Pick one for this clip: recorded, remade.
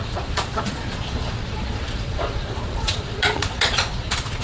remade